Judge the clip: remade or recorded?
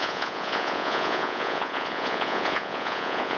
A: remade